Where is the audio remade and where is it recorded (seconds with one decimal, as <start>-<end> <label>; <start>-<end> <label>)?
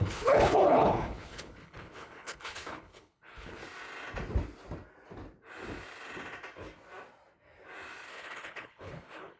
0.0-3.6 remade; 3.6-8.1 recorded; 8.1-9.4 remade